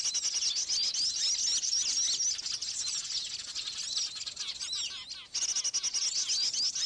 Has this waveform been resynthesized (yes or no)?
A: no